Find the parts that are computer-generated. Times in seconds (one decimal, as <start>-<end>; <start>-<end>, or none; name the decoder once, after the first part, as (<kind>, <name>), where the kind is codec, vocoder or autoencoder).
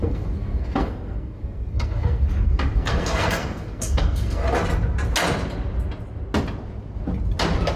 0.0-4.4 (codec, SNAC)